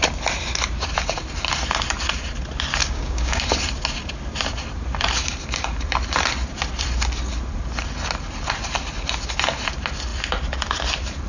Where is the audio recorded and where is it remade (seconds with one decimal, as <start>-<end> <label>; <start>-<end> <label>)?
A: 0.0-2.8 recorded; 2.8-3.4 remade; 3.4-11.3 recorded